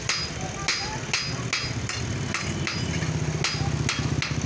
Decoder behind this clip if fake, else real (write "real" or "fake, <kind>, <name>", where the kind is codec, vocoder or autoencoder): real